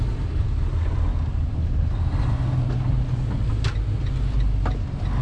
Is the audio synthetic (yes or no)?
no